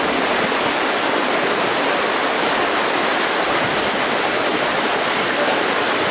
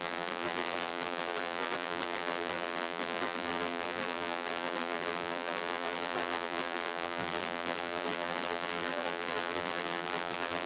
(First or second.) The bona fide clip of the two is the first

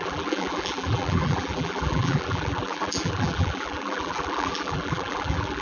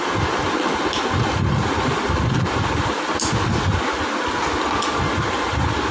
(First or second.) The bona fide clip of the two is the second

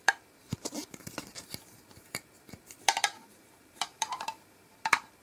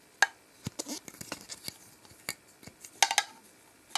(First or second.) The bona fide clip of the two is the second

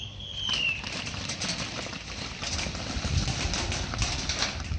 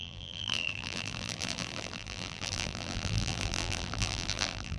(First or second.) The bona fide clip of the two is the first